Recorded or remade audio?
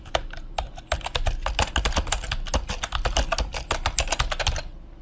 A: recorded